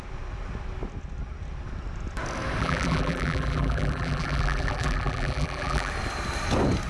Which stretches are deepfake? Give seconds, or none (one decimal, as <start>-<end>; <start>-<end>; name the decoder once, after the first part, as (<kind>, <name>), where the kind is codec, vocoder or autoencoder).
2.6-5.9 (vocoder, BigVGAN v2)